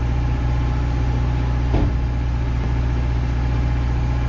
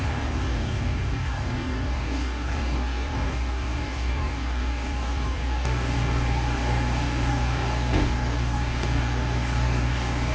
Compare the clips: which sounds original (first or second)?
first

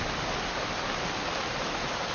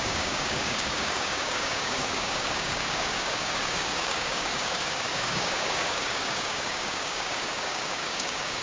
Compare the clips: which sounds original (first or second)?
first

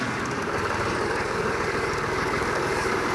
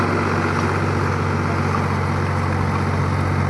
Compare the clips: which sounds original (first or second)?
second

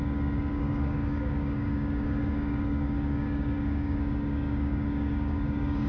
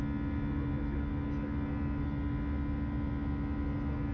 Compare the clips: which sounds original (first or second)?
second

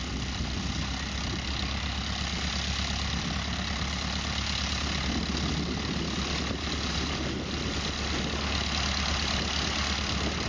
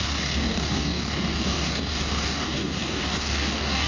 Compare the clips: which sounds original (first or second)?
first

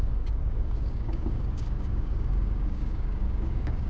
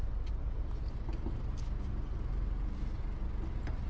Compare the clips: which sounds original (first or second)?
second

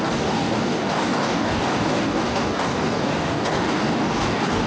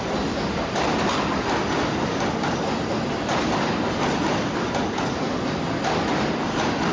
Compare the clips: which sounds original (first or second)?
second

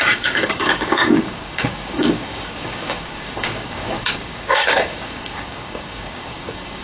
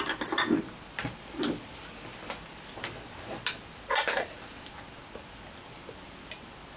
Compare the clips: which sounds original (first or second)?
second